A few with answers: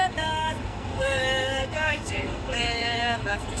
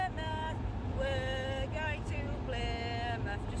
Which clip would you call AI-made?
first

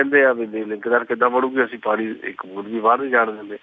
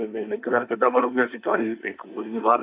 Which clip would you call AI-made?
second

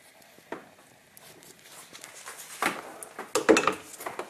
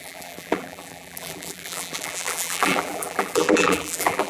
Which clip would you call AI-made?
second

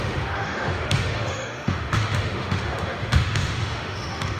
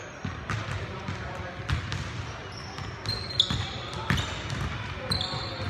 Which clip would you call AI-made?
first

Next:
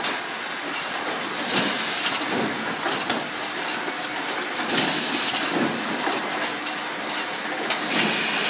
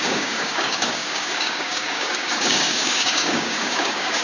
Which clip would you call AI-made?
second